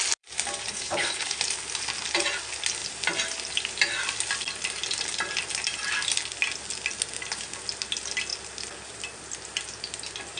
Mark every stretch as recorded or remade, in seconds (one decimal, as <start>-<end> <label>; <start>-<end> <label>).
0.0-0.7 recorded; 0.7-1.4 remade; 1.4-10.4 recorded